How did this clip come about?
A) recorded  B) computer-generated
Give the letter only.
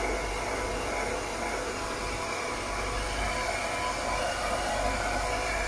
A